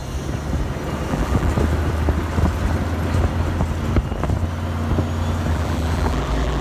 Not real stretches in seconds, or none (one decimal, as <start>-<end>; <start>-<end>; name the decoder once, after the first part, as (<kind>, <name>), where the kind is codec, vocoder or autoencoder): 1.1-1.5 (vocoder, BigVGAN v2); 5.5-6.6